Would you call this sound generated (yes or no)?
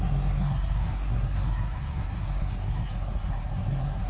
yes